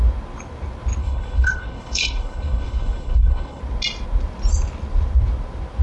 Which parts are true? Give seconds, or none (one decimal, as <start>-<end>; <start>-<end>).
0.0-1.0; 3.6-5.8